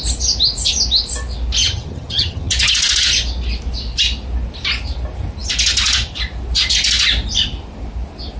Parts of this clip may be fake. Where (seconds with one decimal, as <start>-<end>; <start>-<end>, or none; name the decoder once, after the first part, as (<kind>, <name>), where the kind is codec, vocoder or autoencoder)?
1.6-2.5 (vocoder, HiFi-GAN)